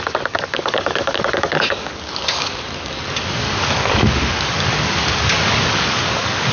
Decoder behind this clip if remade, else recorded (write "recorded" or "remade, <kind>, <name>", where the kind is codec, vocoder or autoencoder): remade, codec, DAC